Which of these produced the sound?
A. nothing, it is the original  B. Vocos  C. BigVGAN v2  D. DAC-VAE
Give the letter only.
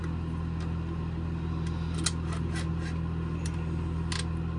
A